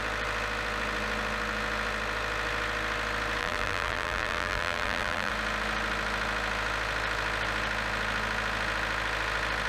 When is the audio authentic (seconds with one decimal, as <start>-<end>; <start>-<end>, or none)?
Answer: 0.0-3.4; 5.3-9.7